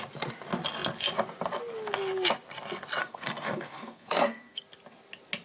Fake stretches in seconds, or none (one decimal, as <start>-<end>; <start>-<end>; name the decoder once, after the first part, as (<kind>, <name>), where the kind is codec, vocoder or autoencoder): 3.0-4.6 (codec, SNAC)

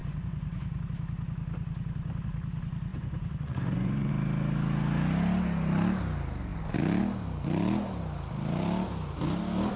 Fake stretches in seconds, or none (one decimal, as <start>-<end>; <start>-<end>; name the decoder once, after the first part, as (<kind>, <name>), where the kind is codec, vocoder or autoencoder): 0.0-0.8 (vocoder, Vocos); 2.9-4.1

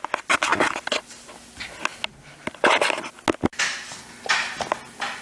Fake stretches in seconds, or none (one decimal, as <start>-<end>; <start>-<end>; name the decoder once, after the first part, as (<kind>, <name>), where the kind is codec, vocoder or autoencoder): none

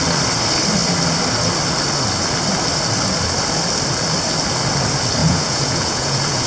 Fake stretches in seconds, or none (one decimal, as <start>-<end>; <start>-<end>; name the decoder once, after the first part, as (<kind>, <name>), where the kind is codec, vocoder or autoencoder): 5.2-6.5 (vocoder, Vocos)

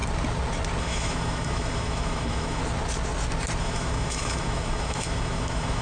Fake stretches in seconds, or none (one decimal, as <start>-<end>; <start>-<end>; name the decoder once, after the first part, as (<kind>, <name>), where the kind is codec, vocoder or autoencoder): 0.8-2.6 (autoencoder, DAC-VAE); 3.6-5.8

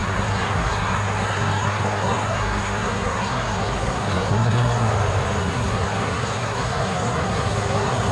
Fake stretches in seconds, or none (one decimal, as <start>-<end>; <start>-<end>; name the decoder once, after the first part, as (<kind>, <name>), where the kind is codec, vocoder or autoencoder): 0.0-4.9 (codec, SNAC); 5.4-8.1

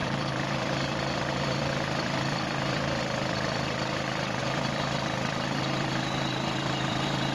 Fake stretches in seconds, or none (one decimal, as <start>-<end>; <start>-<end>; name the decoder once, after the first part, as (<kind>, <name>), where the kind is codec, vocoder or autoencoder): 0.0-7.3 (vocoder, BigVGAN v2)

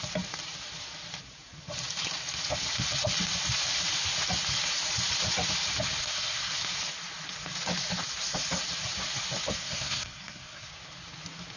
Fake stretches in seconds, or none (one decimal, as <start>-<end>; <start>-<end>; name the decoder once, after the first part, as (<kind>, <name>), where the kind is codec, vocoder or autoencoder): 6.0-6.5 (codec, SNAC); 9.6-10.7